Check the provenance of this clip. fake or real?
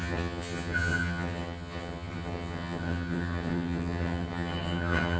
fake